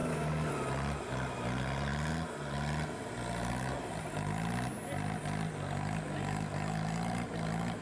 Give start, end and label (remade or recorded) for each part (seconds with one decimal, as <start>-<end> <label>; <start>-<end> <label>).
0.0-0.5 remade; 0.5-7.8 recorded